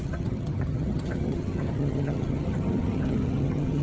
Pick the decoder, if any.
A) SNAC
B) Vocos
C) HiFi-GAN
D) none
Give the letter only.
C